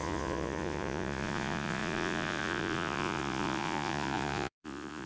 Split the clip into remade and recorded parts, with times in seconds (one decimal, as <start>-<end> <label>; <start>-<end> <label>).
0.0-5.1 remade